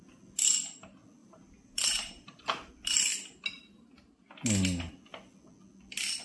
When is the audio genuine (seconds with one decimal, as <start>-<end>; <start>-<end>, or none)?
0.0-1.2; 2.7-6.2